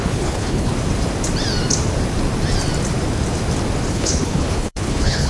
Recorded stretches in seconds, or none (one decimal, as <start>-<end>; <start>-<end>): 0.7-3.9